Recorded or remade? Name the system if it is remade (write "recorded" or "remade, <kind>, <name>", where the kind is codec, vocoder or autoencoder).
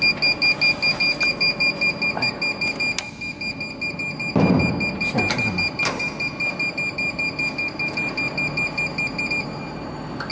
recorded